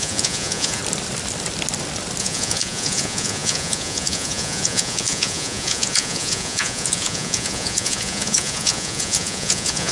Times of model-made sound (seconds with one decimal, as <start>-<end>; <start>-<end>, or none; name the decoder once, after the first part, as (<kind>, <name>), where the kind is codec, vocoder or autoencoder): 0.0-0.8 (vocoder, Vocos); 2.2-9.9